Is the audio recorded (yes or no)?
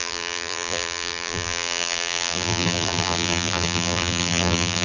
no